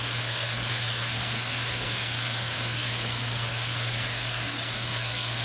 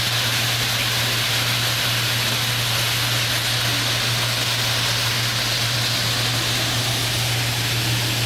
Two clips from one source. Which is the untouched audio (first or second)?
second